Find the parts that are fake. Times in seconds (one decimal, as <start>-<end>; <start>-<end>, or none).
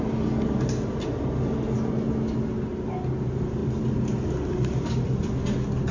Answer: none